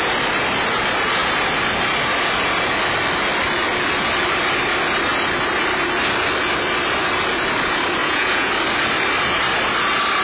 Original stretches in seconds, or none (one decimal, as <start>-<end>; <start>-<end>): 0.0-8.0; 8.5-10.2